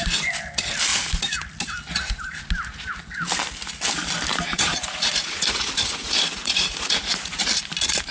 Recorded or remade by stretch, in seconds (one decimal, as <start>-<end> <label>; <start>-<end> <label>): 0.0-4.3 recorded; 4.3-7.4 remade; 7.4-8.1 recorded